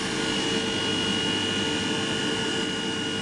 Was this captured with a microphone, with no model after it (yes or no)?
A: yes